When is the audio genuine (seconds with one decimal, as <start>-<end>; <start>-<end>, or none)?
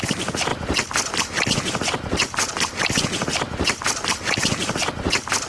0.0-0.5; 1.5-3.3; 4.9-5.5